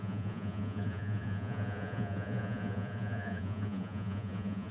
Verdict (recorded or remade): remade